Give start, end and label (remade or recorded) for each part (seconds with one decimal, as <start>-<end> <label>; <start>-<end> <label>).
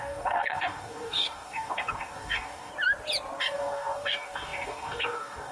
0.0-2.7 remade; 2.7-3.4 recorded; 3.4-5.5 remade